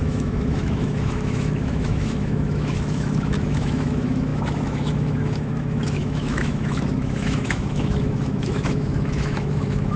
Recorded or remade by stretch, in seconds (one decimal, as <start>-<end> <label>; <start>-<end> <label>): 0.0-10.0 remade